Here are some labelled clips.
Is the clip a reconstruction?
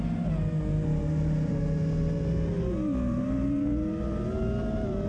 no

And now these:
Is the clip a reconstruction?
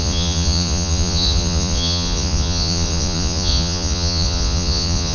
yes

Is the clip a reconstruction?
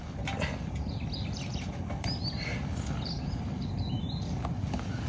no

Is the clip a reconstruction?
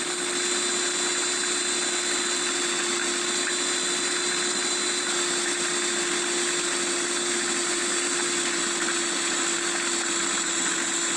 no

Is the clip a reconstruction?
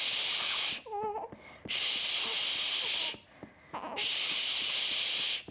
no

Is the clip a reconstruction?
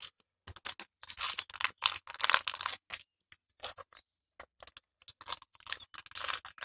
no